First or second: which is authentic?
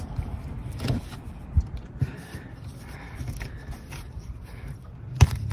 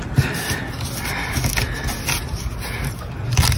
second